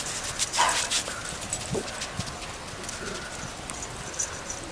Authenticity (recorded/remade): recorded